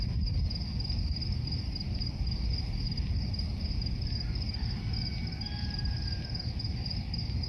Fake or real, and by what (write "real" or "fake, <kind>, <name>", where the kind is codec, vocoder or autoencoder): real